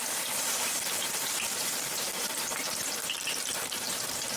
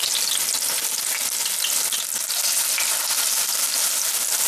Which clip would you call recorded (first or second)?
second